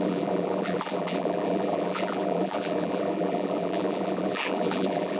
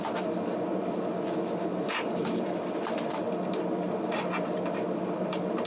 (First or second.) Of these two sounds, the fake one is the first